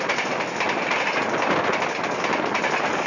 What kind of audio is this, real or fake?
real